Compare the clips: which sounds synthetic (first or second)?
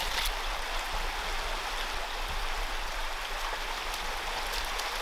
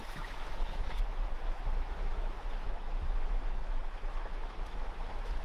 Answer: second